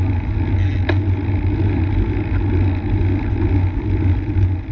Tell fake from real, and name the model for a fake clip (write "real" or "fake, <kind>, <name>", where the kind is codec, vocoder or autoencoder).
real